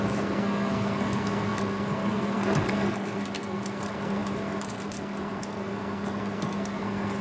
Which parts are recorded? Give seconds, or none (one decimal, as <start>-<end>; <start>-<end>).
none